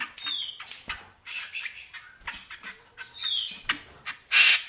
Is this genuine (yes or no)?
yes